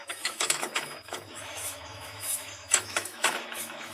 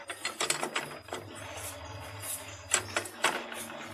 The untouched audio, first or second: second